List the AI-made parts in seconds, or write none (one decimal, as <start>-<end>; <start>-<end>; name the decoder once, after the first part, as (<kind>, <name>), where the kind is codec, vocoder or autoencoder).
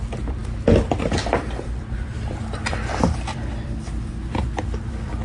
0.0-5.2 (vocoder, BigVGAN v2)